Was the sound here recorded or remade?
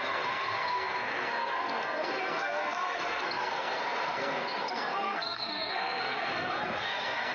remade